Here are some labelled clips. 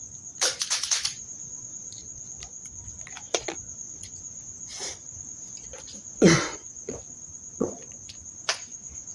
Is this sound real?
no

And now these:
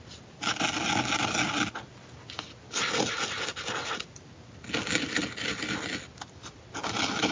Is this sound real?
yes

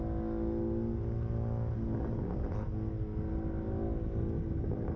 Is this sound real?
yes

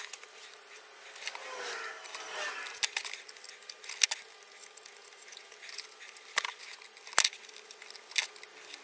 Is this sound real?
yes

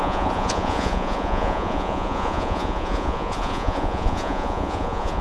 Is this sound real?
no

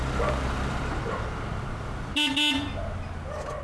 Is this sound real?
yes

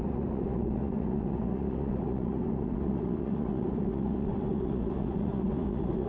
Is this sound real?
no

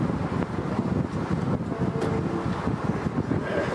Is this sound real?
yes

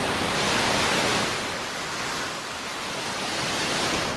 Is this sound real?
yes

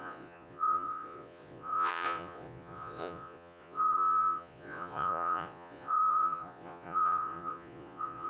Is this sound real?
no